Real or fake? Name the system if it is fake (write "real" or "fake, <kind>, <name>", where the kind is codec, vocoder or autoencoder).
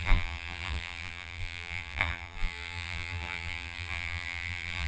fake, vocoder, BigVGAN v2